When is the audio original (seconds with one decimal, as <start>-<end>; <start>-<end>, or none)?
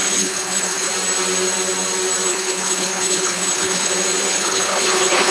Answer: 0.9-2.3; 3.9-4.3